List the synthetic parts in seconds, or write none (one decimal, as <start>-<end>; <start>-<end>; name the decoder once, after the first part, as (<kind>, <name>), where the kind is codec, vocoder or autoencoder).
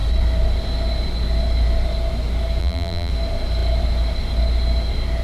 2.6-3.1 (vocoder, BigVGAN v2)